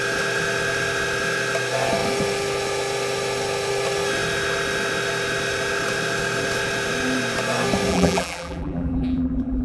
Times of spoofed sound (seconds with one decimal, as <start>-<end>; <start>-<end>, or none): 7.9-9.6